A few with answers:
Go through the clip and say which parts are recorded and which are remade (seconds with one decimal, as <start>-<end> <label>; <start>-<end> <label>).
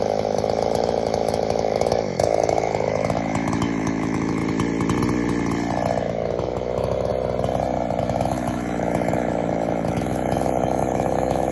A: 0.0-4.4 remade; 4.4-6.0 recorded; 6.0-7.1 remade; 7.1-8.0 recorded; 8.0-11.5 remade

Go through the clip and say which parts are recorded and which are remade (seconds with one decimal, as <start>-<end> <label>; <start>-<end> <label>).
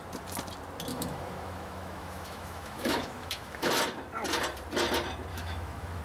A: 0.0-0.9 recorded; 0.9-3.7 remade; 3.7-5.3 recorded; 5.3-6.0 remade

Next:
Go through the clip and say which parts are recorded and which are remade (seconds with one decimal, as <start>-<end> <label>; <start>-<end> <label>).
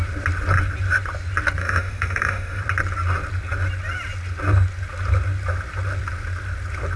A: 0.0-1.6 recorded; 1.6-2.6 remade; 2.6-7.0 recorded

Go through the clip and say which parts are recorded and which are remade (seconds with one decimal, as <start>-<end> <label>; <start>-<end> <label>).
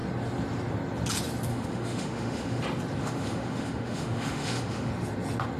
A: 0.0-1.5 recorded; 1.5-2.6 remade; 2.6-3.0 recorded; 3.0-4.9 remade; 4.9-5.6 recorded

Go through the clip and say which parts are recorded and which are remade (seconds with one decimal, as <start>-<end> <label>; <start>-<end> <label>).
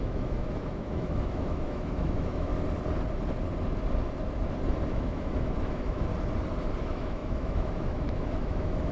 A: 0.0-2.5 remade; 2.5-4.9 recorded; 4.9-6.1 remade; 6.1-6.8 recorded; 6.8-8.9 remade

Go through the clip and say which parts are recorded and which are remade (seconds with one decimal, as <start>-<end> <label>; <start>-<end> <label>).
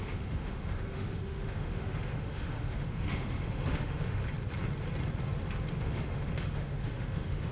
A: 0.0-4.2 remade; 4.2-5.7 recorded; 5.7-7.5 remade